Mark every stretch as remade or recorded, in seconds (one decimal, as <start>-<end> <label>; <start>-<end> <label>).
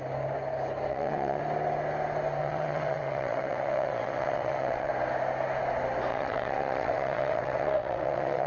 0.0-0.9 recorded; 0.9-1.4 remade; 1.4-2.4 recorded; 2.4-4.9 remade; 4.9-6.1 recorded; 6.1-8.5 remade